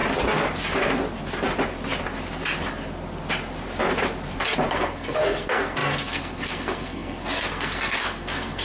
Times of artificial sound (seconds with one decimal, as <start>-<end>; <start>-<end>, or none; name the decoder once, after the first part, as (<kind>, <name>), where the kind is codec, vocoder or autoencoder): 4.7-8.6 (codec, SNAC)